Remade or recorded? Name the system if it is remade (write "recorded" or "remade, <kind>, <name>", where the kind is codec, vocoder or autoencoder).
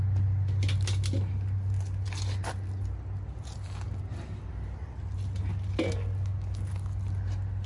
recorded